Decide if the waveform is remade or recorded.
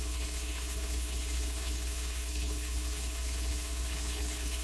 remade